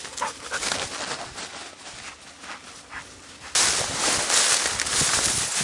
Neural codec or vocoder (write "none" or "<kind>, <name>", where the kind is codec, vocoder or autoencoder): none